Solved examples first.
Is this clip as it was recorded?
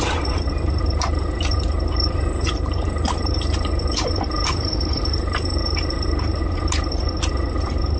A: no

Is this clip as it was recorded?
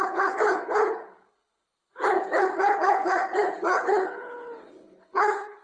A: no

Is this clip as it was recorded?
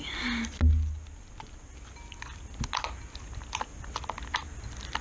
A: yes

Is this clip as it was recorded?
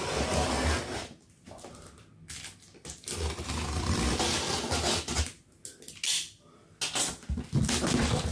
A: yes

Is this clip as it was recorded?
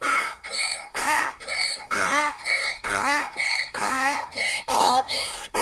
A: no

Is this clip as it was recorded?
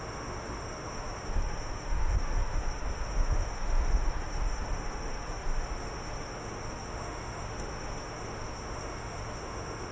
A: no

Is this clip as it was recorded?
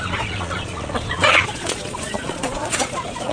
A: no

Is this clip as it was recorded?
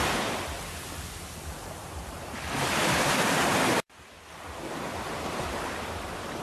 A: no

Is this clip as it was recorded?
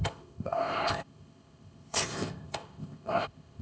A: no